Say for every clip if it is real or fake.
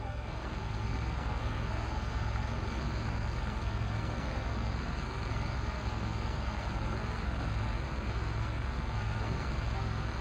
fake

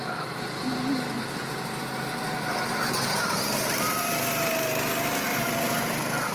real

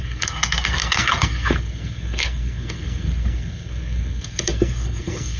fake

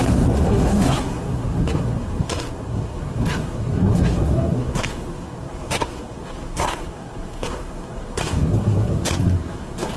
fake